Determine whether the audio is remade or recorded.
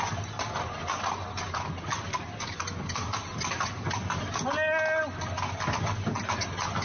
recorded